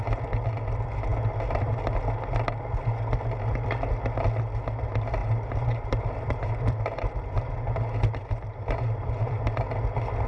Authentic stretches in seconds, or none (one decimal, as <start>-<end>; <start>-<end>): 0.0-5.2; 9.4-10.3